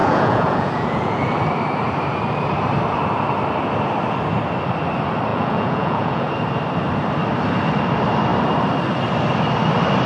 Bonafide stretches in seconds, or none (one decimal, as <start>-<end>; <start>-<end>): 1.2-5.3; 6.3-10.1